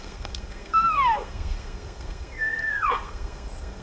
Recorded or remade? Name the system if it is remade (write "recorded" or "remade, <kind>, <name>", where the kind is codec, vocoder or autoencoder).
remade, codec, SNAC